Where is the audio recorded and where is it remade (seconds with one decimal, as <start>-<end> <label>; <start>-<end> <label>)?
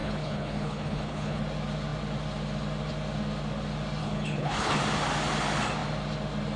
0.0-1.4 remade; 1.4-4.0 recorded; 4.0-4.8 remade; 4.8-6.6 recorded